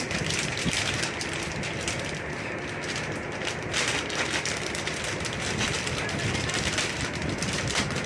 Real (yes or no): no